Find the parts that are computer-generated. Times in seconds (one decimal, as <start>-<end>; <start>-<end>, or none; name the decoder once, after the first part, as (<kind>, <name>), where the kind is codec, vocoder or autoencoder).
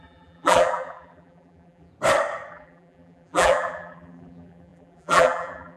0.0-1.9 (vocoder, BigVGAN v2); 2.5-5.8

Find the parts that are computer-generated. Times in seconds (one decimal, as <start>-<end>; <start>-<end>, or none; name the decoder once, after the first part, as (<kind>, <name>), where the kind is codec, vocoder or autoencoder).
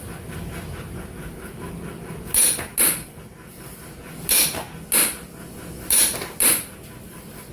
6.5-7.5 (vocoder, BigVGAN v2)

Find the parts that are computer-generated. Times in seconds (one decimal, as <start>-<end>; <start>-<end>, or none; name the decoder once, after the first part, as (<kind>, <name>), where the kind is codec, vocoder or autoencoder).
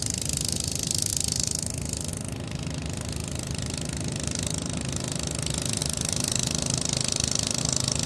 3.2-4.4 (vocoder, BigVGAN v2); 5.8-7.6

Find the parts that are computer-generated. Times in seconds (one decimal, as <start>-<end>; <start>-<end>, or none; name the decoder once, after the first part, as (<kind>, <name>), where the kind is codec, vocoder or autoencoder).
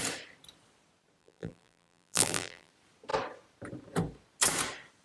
1.2-2.7 (vocoder, BigVGAN v2)